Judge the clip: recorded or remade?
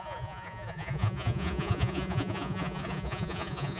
remade